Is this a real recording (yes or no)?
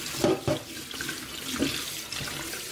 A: yes